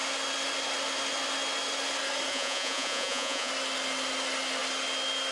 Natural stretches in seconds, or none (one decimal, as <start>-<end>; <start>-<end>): 0.0-2.3; 3.5-5.3